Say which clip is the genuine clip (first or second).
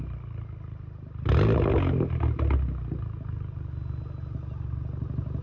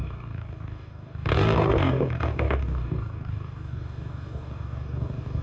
first